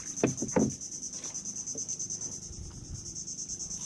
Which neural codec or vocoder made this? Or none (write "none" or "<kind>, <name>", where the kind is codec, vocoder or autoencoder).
none